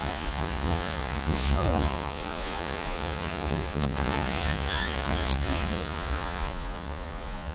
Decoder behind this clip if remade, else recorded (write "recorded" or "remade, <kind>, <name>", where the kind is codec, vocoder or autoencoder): remade, vocoder, Vocos